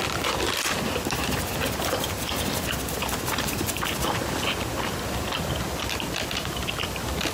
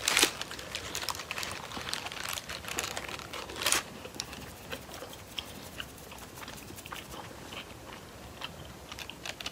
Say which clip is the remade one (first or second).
second